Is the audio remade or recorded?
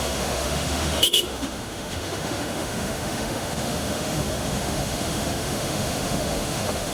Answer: remade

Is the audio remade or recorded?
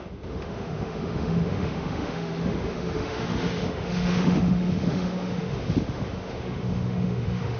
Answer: remade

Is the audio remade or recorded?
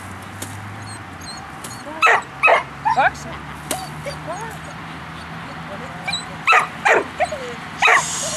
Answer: recorded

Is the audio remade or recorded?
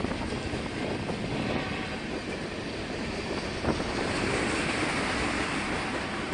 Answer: recorded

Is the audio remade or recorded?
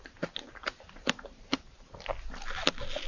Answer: recorded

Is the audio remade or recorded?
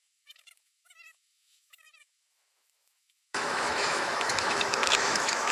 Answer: remade